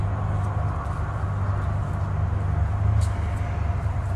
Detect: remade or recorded recorded